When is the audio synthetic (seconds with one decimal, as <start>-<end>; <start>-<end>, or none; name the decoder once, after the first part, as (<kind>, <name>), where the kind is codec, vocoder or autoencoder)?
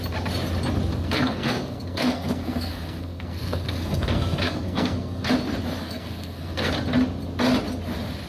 0.9-5.3 (codec, SNAC); 5.8-6.7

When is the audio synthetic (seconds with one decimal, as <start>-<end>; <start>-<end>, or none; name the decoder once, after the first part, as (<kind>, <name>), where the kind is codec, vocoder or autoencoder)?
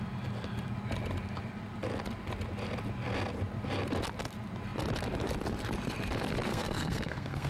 6.5-7.5 (codec, SNAC)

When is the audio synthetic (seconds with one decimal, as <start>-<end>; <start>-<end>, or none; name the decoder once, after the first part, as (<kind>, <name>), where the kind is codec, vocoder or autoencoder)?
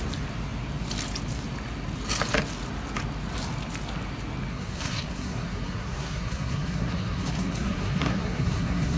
4.5-9.0 (codec, SNAC)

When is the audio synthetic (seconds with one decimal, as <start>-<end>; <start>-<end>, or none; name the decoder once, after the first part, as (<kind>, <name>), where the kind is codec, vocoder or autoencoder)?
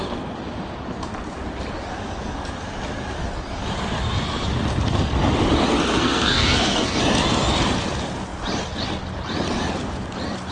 5.9-7.0 (codec, SNAC)